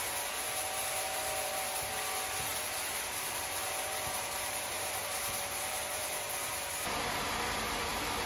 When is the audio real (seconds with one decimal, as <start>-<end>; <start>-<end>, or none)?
0.0-0.8; 1.9-2.5; 5.9-8.3